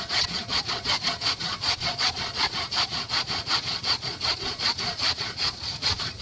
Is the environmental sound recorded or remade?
remade